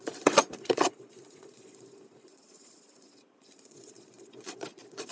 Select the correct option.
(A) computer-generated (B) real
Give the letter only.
A